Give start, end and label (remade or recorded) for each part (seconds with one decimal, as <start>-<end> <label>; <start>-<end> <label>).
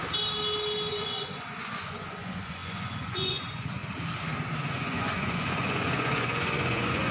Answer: 0.0-0.9 recorded; 0.9-3.8 remade; 3.8-4.7 recorded; 4.7-7.1 remade